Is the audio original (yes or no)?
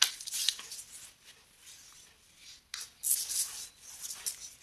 yes